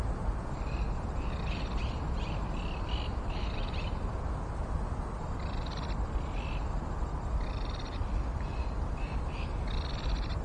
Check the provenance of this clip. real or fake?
real